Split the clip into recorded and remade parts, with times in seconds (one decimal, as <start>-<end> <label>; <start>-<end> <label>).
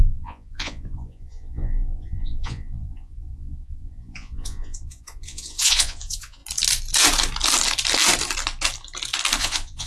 0.0-6.4 remade; 6.4-9.4 recorded; 9.4-9.9 remade